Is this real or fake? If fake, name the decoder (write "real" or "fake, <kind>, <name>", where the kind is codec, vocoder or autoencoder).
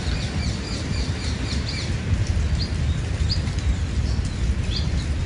fake, vocoder, BigVGAN v2